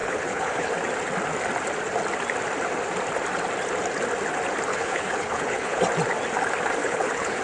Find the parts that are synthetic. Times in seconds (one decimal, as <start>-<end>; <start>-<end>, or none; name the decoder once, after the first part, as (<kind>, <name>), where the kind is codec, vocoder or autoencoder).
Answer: 0.0-0.7 (codec, HILCodec); 4.7-5.8; 6.8-7.4